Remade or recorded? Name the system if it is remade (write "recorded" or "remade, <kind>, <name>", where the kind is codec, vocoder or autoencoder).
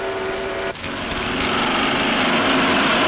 recorded